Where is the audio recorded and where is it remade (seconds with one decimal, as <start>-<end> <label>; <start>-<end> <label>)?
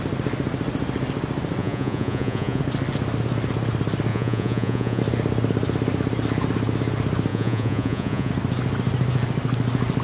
0.0-1.6 recorded; 1.6-2.6 remade; 2.6-4.1 recorded; 4.1-5.0 remade; 5.0-7.3 recorded; 7.3-8.3 remade; 8.3-10.0 recorded